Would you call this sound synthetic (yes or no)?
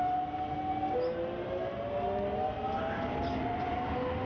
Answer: no